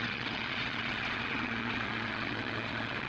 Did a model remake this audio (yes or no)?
yes